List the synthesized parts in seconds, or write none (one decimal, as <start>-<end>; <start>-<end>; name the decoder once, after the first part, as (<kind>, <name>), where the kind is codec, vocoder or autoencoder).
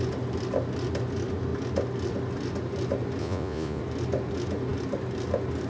3.2-3.8 (vocoder, Vocos)